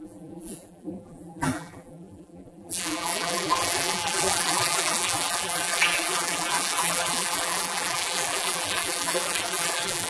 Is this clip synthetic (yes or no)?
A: yes